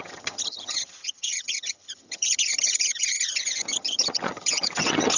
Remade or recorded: remade